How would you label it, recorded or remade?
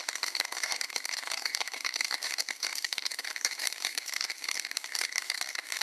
remade